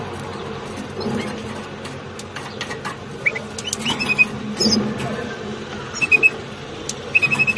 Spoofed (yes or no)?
no